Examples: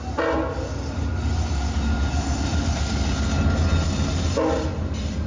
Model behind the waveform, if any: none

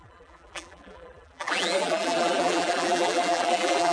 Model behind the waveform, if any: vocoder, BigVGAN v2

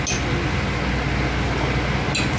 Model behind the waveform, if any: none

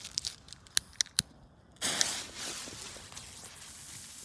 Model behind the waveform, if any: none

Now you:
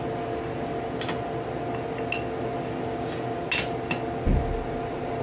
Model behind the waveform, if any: none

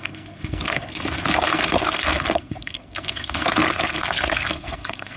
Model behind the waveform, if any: codec, SNAC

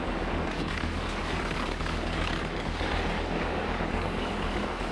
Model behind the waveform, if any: codec, DAC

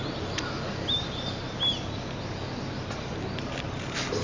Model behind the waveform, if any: none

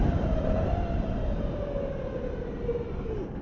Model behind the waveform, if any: none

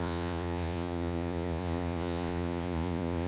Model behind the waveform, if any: vocoder, Vocos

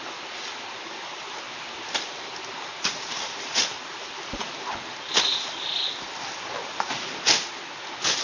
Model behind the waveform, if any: none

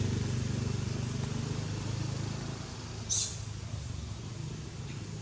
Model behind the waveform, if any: none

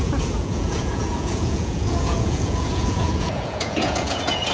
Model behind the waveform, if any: vocoder, Vocos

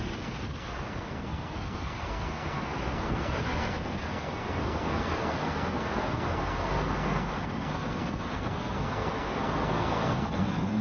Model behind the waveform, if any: codec, SNAC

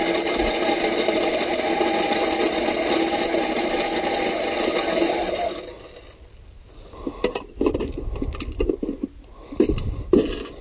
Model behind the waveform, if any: none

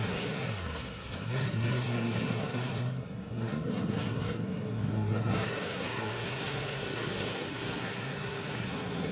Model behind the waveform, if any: codec, SNAC